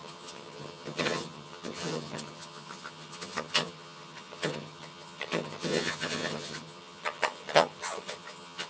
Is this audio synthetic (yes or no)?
yes